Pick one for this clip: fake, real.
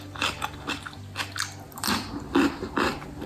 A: real